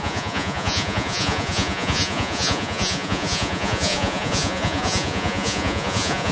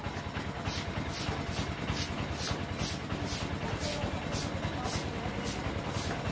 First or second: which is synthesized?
first